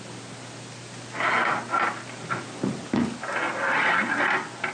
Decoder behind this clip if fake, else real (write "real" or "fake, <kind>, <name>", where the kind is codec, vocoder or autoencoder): real